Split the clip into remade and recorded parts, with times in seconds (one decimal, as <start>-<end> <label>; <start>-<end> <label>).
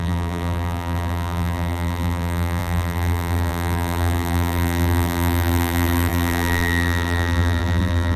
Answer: 0.0-8.2 remade